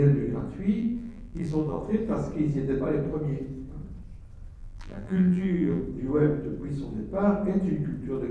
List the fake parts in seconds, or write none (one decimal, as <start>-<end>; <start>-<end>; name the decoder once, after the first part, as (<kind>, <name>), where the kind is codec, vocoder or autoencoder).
0.8-1.8 (vocoder, BigVGAN v2); 4.6-5.8